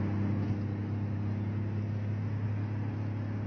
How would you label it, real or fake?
real